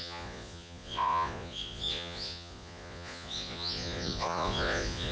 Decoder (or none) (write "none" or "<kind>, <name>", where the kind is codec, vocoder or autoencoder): vocoder, Vocos